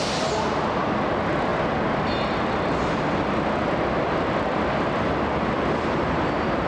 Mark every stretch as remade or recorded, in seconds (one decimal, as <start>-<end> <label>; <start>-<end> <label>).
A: 0.0-6.7 recorded